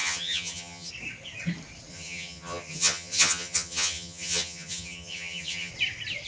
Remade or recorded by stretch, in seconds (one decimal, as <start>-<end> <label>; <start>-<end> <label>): 0.0-0.9 remade; 0.9-1.9 recorded; 1.9-5.7 remade; 5.7-6.3 recorded